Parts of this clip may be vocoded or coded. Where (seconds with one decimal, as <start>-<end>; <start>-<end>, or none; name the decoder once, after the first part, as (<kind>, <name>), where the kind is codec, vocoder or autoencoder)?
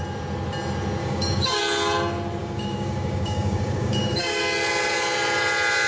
1.0-1.6 (codec, DAC); 2.4-4.4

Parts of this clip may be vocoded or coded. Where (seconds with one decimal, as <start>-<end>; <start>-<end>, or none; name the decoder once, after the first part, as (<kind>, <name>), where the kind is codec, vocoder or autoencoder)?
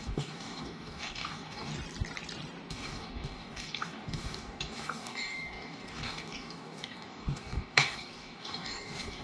0.0-1.7 (codec, DAC); 2.7-9.2